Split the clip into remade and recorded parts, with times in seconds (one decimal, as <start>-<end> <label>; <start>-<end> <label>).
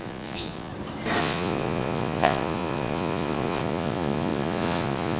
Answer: 0.0-0.7 remade; 0.7-1.2 recorded; 1.2-5.2 remade